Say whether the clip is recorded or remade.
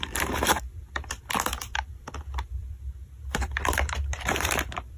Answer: remade